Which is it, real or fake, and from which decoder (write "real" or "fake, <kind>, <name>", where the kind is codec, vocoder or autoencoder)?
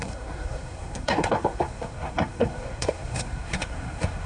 fake, codec, SNAC